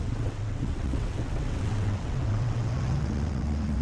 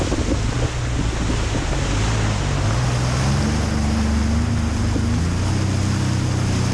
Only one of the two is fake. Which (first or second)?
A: first